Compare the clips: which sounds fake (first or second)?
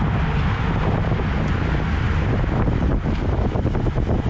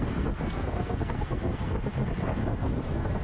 second